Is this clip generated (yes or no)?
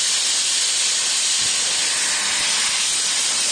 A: no